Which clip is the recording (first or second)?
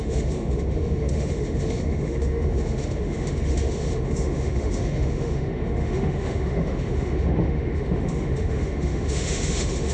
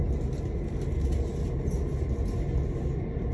second